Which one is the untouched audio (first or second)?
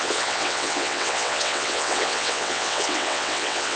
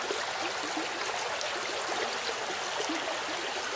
second